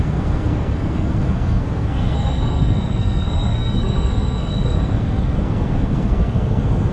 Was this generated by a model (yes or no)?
yes